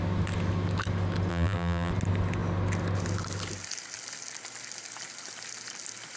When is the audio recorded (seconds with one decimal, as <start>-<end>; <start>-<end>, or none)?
0.0-1.3; 1.9-6.2